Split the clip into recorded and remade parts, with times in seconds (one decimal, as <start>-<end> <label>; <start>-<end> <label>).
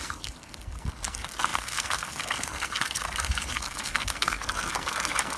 0.0-5.4 remade